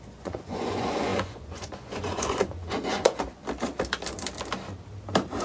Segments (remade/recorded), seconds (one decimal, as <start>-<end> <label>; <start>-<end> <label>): 0.0-3.4 remade; 3.4-5.4 recorded